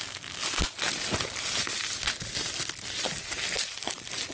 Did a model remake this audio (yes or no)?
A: no